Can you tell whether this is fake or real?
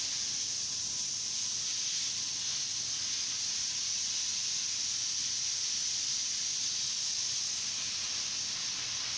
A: real